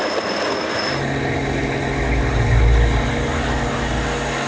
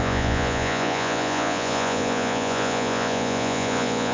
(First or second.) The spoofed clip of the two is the second